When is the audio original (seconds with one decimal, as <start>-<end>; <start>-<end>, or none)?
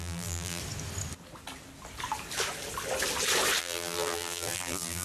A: 0.6-3.6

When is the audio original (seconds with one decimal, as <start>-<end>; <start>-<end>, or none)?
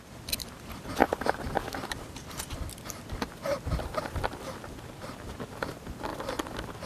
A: 0.0-6.9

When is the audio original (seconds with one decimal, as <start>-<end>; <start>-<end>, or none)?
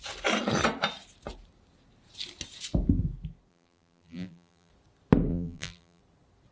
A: 0.0-3.5; 4.7-5.3; 6.0-6.5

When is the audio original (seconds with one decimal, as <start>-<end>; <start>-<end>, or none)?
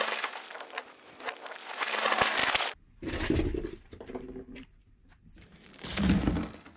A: 0.0-6.8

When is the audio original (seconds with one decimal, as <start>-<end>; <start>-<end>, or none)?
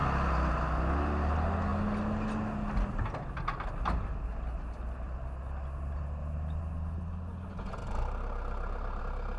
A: 0.0-7.8; 9.0-9.4